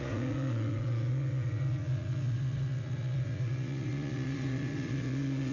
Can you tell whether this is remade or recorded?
remade